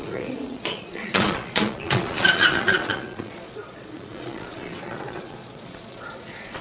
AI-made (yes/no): yes